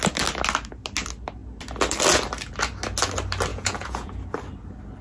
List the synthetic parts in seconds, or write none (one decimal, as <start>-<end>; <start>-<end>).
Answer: 3.5-4.1